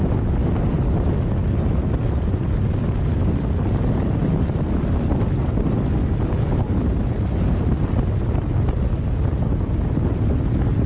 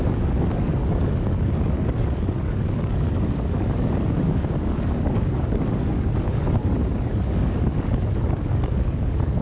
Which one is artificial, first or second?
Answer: second